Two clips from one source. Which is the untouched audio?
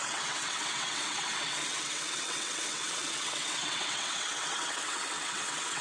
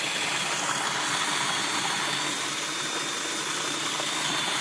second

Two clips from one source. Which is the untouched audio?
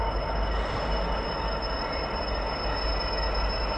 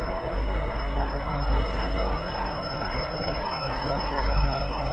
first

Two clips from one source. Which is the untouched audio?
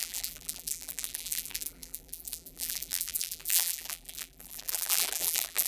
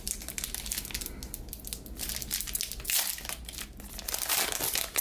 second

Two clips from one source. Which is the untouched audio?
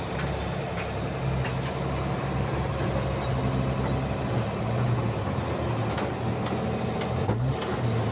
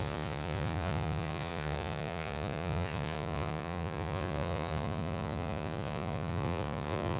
first